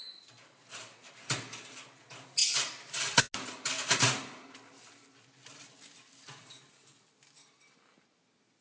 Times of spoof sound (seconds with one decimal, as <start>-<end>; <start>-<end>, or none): none